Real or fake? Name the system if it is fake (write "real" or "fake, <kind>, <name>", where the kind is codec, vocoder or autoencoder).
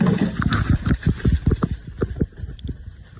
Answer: real